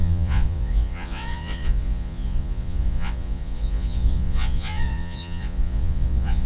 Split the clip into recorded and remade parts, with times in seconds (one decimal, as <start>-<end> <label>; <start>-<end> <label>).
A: 0.0-6.5 remade

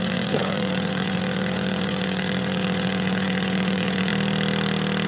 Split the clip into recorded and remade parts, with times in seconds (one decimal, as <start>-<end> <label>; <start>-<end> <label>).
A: 0.0-4.1 remade; 4.1-5.1 recorded

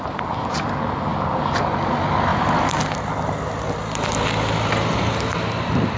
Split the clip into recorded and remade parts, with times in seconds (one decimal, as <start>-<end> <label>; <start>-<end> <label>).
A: 0.0-6.0 recorded

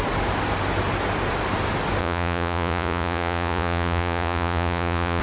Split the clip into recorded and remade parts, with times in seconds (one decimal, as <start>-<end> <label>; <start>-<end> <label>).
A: 0.0-2.0 recorded; 2.0-5.2 remade

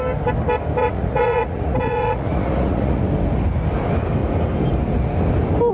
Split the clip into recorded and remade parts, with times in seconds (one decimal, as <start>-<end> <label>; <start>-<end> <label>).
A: 0.0-0.8 recorded; 0.8-3.0 remade; 3.0-5.7 recorded